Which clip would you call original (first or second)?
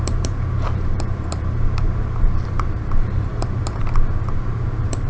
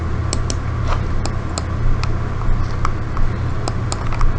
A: second